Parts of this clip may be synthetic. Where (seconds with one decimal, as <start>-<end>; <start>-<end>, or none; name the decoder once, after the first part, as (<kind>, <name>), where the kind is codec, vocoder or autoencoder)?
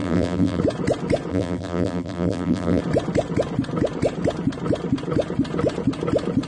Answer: 0.0-0.6 (vocoder, BigVGAN v2); 1.3-2.8